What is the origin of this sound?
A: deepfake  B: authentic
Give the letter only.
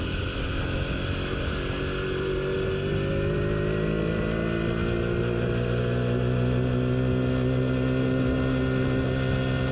B